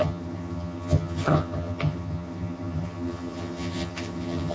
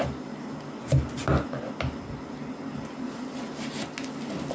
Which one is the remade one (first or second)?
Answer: first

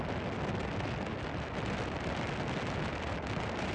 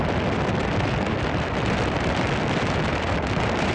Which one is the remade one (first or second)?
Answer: second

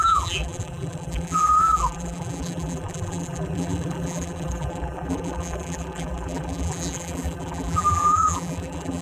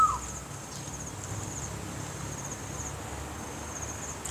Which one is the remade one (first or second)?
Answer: first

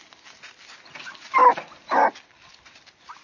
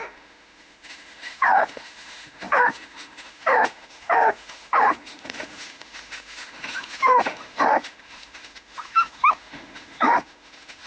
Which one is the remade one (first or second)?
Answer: second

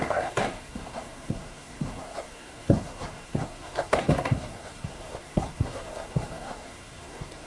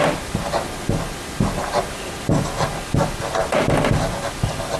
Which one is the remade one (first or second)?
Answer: first